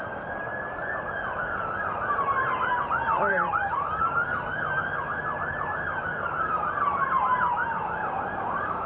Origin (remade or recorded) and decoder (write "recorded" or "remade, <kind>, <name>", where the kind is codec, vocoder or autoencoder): remade, vocoder, BigVGAN v2